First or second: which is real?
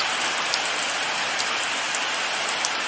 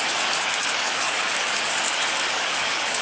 first